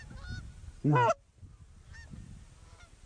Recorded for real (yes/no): yes